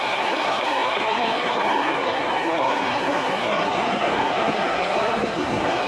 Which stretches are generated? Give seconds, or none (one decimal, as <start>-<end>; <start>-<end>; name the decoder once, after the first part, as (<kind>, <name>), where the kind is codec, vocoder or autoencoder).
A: 0.0-5.9 (codec, SNAC)